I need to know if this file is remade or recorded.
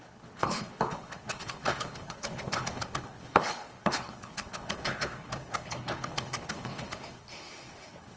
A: remade